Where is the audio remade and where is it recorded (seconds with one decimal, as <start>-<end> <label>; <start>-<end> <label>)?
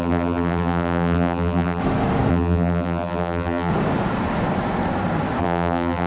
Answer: 0.0-1.8 remade; 1.8-2.3 recorded; 2.3-3.7 remade; 3.7-5.4 recorded; 5.4-6.1 remade